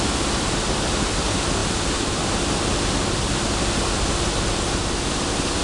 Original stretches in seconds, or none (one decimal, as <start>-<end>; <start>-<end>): 0.0-5.6